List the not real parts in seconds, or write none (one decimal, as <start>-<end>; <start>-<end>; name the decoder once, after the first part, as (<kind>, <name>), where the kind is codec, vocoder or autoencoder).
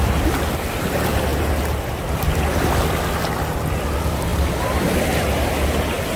none